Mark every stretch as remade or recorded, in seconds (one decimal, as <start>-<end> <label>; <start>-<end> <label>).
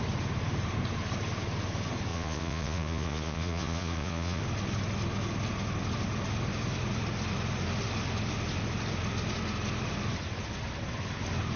0.0-2.1 recorded; 2.1-4.4 remade; 4.4-11.6 recorded